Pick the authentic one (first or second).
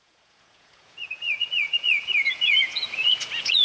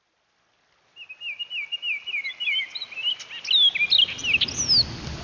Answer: second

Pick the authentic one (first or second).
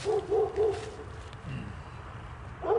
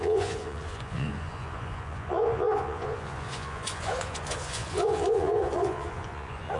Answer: first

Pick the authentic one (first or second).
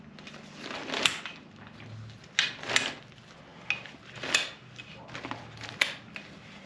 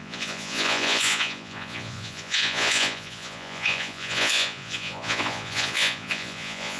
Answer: first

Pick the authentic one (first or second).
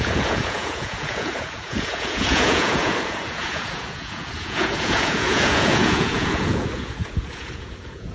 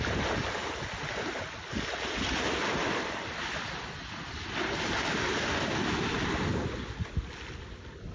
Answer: second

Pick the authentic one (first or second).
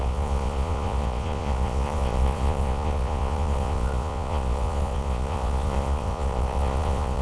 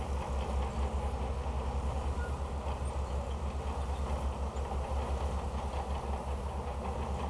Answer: second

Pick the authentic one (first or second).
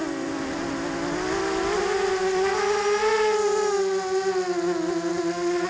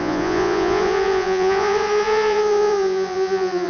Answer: first